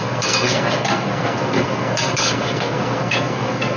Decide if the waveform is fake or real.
fake